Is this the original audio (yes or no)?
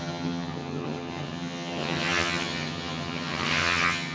no